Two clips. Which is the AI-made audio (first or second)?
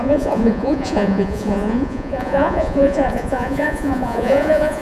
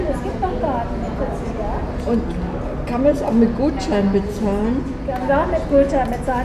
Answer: first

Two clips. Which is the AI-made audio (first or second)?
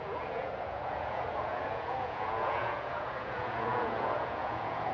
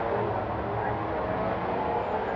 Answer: first